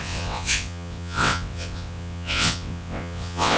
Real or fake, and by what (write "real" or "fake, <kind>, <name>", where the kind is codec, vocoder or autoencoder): fake, vocoder, WaveNeXt